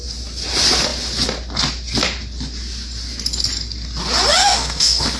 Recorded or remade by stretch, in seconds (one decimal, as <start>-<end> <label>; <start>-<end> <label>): 0.0-4.4 recorded; 4.4-5.2 remade